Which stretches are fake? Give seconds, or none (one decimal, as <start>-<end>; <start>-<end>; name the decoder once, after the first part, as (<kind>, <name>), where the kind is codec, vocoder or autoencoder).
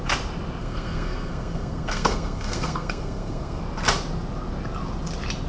0.6-3.6 (codec, SNAC)